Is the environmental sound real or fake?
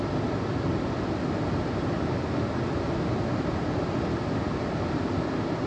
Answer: real